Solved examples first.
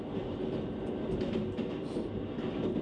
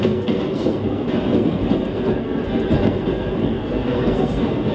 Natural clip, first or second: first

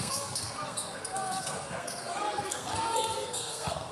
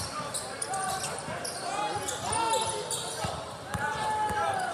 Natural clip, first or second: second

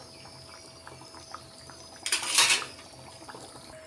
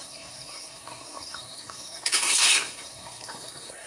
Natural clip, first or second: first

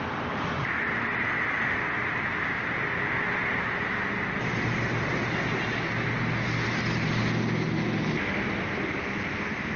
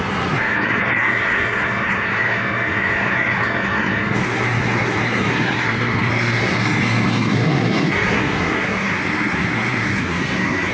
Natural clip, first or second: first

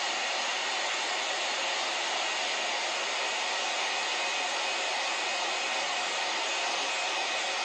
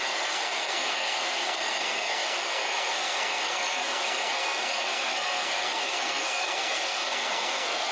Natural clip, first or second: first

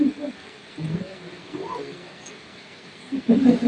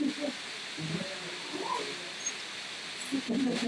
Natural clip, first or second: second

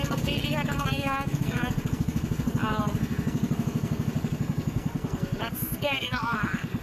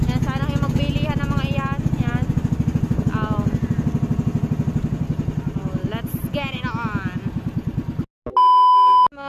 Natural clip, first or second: second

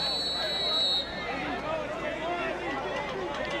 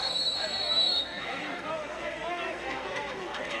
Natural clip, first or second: first